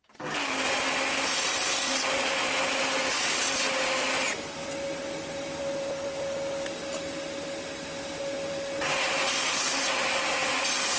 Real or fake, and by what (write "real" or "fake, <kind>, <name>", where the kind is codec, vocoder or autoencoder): real